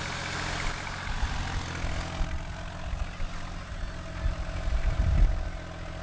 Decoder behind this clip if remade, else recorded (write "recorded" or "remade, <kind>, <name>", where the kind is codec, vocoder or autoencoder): recorded